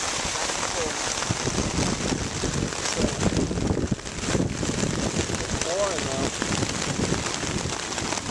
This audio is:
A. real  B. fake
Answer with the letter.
A